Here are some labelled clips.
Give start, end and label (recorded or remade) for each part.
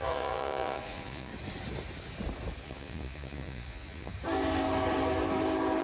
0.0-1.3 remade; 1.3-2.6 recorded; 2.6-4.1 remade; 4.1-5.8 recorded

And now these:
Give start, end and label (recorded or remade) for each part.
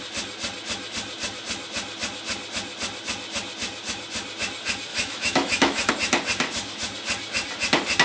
0.0-4.9 recorded; 4.9-5.9 remade; 5.9-8.0 recorded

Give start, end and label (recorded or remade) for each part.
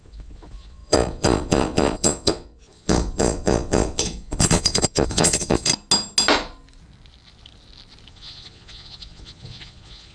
0.0-5.7 remade; 5.7-8.1 recorded; 8.1-10.1 remade